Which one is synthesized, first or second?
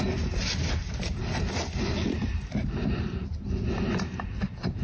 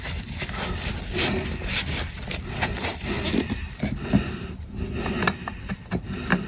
first